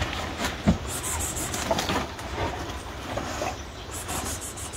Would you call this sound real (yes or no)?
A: no